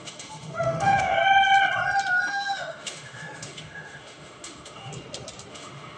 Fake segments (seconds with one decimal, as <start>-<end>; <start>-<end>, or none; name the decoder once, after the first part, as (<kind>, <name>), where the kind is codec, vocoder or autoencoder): 0.0-1.2 (autoencoder, DAC-VAE); 2.3-4.9; 5.5-6.0